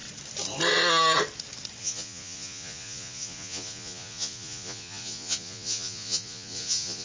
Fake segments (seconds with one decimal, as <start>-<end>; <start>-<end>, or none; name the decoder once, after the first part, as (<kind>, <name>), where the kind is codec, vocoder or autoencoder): 1.8-7.0 (vocoder, Vocos)